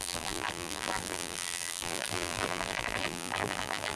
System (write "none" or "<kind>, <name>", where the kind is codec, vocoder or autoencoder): vocoder, BigVGAN v2